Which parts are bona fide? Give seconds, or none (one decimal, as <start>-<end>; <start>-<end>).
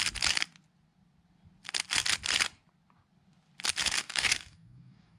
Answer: 0.0-4.0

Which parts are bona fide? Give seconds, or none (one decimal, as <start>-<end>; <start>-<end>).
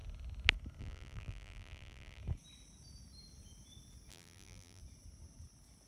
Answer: 0.0-0.8; 2.2-4.1; 4.8-5.9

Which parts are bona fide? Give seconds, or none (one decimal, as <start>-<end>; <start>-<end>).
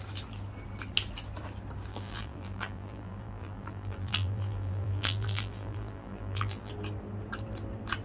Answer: 0.0-1.9; 6.7-8.0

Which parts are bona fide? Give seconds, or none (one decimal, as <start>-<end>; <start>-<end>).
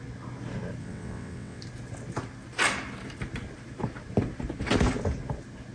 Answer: 0.0-0.8; 1.6-5.7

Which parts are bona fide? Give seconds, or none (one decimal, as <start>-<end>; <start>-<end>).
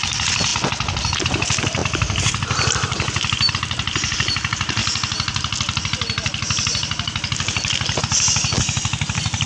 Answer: 0.0-9.5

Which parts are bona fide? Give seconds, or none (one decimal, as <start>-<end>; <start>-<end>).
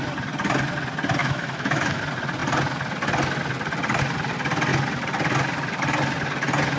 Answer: 0.0-1.2; 2.0-6.8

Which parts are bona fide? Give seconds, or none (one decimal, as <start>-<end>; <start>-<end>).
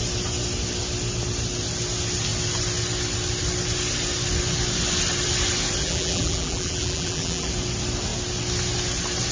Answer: 0.0-5.8; 7.5-9.3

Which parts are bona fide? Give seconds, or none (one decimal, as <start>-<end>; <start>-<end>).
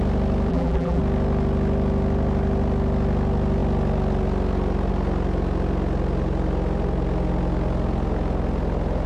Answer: 0.0-0.5; 1.0-9.1